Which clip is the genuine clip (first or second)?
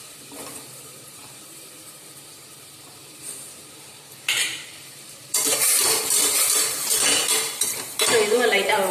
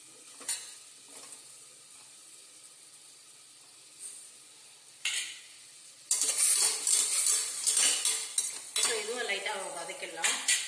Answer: second